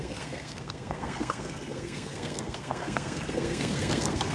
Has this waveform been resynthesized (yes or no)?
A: yes